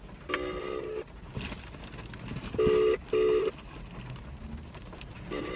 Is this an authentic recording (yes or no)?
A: yes